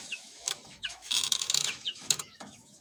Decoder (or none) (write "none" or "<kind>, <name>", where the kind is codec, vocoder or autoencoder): autoencoder, DAC-VAE